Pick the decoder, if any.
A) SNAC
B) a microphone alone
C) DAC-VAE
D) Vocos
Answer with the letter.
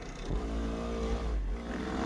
B